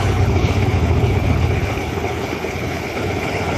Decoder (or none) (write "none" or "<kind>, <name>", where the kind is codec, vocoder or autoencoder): codec, HILCodec